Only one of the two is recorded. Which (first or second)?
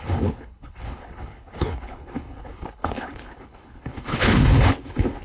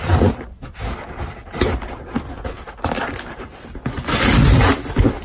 second